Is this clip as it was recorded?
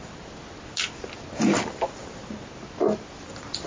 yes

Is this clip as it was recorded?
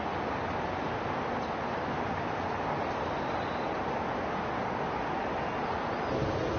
yes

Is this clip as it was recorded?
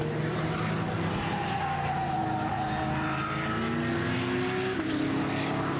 yes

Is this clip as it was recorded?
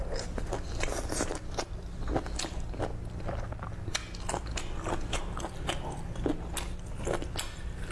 yes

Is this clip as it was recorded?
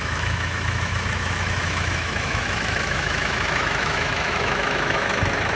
no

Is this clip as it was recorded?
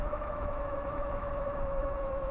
no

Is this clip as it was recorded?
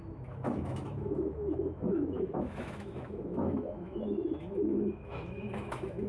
no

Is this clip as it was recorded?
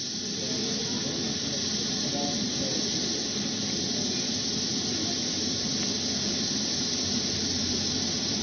yes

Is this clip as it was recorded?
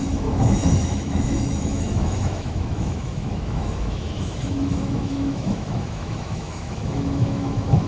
no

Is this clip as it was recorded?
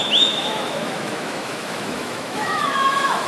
no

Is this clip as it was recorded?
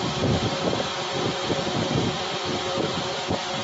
yes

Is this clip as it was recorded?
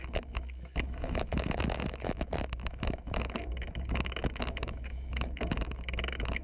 no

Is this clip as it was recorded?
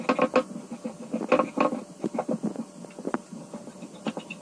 yes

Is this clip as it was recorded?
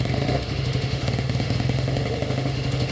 no